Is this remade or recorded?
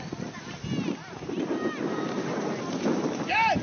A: recorded